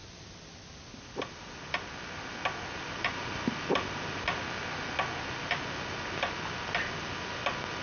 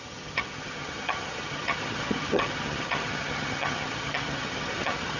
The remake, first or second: second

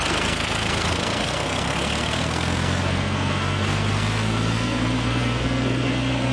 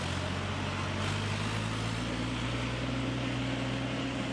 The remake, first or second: first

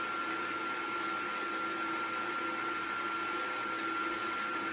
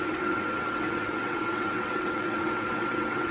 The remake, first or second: second